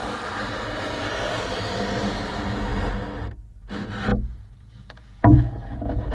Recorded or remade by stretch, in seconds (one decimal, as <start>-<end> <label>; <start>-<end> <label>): 0.0-4.1 recorded; 4.1-6.1 remade